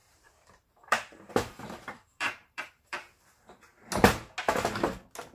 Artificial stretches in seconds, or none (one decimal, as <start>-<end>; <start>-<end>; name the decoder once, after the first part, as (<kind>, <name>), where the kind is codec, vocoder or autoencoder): 0.0-3.2 (vocoder, BigVGAN v2)